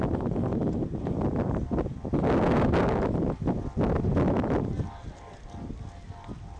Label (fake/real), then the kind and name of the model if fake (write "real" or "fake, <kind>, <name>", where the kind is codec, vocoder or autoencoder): real